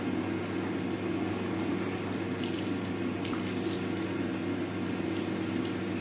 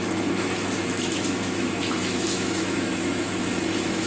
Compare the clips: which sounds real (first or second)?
first